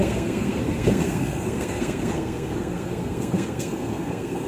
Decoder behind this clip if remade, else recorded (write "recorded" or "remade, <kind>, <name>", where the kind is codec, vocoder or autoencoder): remade, codec, SNAC